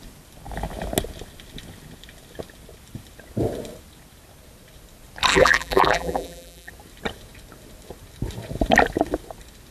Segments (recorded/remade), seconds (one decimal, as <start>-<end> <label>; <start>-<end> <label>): 0.0-5.3 recorded; 5.3-6.7 remade; 6.7-9.7 recorded